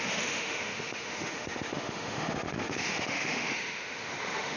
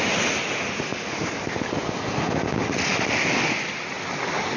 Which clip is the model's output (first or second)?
first